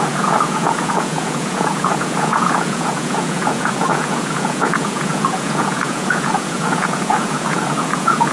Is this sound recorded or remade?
remade